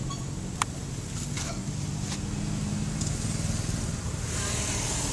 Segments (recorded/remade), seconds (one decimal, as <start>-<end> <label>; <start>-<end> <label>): 0.0-5.1 recorded